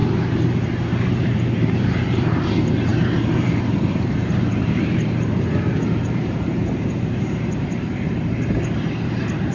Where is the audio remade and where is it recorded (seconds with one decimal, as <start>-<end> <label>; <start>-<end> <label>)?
0.0-1.1 recorded; 1.1-9.5 remade